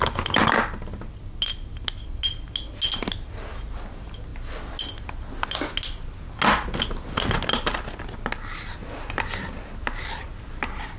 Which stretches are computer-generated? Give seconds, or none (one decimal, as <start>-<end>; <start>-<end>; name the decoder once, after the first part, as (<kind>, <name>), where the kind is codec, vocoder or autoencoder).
none